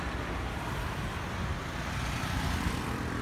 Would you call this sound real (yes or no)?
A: yes